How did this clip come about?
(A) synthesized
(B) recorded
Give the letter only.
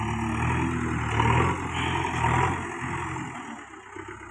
B